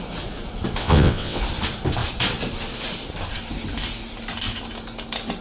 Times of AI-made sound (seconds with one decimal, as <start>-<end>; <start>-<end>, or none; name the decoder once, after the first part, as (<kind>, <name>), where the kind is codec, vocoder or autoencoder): 0.8-1.4 (vocoder, WaveNeXt)